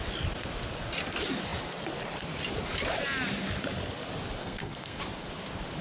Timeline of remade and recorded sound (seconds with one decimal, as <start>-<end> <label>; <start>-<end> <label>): 0.0-4.4 recorded; 4.4-5.0 remade; 5.0-5.8 recorded